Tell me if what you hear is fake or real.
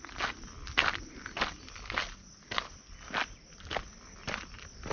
real